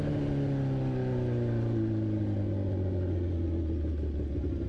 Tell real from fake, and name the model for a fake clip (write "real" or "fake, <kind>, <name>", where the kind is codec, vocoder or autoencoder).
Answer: real